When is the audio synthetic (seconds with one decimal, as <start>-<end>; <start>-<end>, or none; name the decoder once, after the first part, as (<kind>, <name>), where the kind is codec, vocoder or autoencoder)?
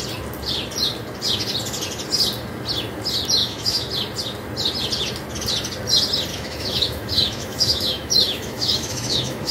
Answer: 3.4-3.9 (autoencoder, DAC-VAE); 6.3-9.5